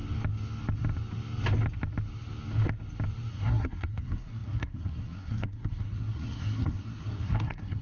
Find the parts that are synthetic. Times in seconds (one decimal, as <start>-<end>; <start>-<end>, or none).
3.3-7.8